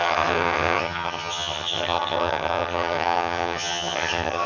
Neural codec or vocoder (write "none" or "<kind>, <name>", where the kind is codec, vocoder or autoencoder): vocoder, HiFi-GAN